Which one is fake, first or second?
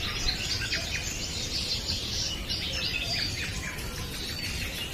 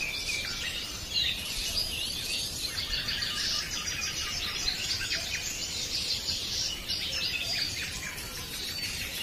second